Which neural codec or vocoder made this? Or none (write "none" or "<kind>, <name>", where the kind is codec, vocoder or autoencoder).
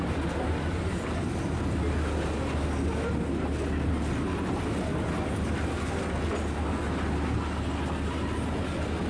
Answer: none